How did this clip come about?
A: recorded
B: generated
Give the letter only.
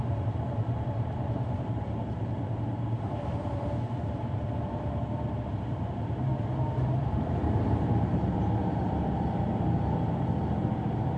B